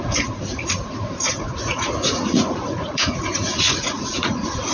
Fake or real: fake